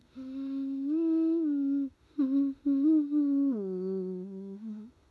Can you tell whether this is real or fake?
fake